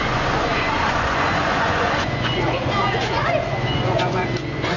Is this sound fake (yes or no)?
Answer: yes